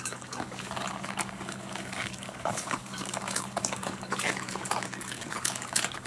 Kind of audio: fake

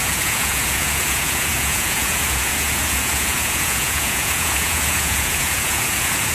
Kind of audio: fake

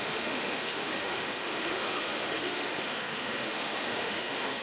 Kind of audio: fake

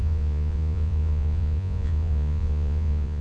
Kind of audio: fake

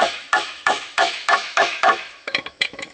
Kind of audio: fake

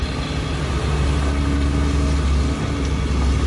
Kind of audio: real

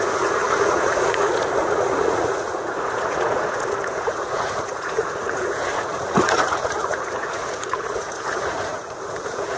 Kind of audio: fake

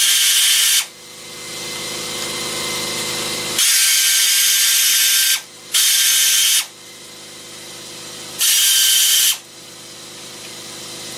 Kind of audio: real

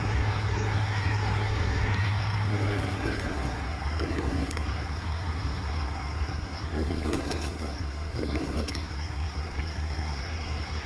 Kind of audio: fake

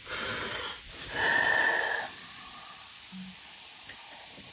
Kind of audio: real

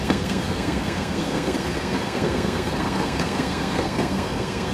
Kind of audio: fake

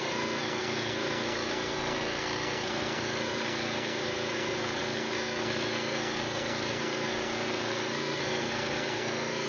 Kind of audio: fake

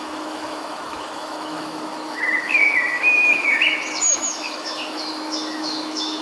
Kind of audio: fake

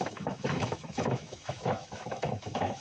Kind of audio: fake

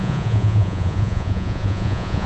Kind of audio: fake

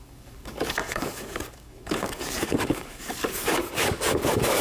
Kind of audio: fake